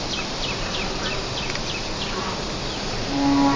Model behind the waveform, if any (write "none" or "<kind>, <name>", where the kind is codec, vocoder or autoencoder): none